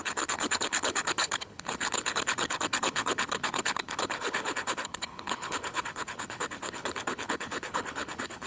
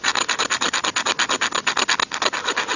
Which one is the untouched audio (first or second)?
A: second